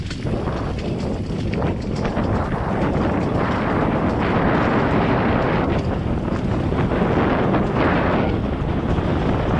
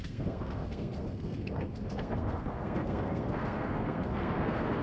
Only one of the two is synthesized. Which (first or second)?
second